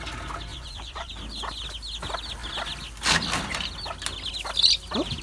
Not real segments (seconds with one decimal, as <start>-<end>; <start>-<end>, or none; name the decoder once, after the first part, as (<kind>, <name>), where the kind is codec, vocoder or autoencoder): 0.5-1.1 (vocoder, Vocos)